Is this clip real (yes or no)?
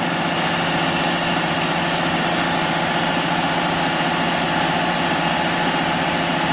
yes